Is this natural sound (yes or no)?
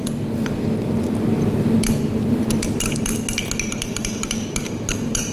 yes